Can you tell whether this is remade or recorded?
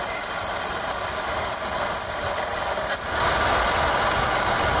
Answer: recorded